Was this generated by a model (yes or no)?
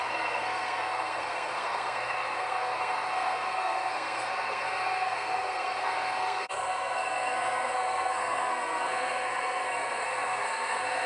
yes